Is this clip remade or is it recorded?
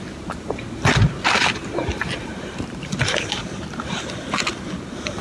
remade